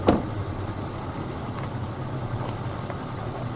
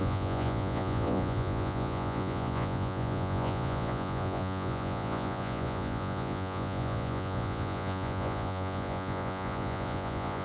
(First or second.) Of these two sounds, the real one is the first